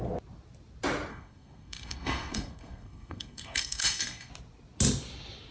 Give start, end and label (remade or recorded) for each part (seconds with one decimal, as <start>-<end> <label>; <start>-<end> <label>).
0.0-1.1 recorded; 1.1-4.3 remade; 4.3-5.5 recorded